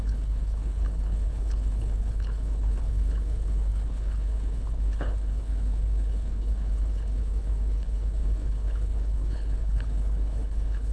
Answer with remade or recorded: remade